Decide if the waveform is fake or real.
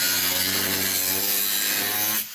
real